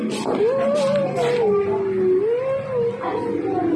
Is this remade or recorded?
recorded